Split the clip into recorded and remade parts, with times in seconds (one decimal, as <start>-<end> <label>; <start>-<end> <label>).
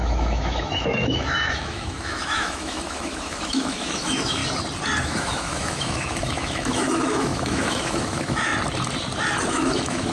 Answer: 0.0-4.4 remade; 4.4-5.0 recorded; 5.0-8.5 remade; 8.5-9.5 recorded; 9.5-10.1 remade